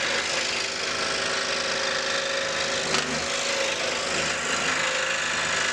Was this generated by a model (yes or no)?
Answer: no